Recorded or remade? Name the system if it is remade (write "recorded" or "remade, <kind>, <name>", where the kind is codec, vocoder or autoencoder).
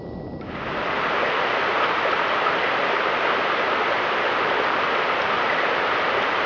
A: recorded